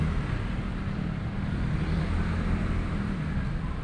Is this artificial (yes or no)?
yes